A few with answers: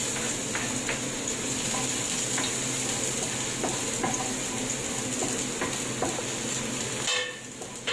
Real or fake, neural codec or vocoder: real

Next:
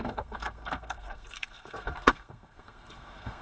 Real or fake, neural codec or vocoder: fake, codec, SNAC